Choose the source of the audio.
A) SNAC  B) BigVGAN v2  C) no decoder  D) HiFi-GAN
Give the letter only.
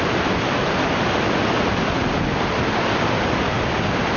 C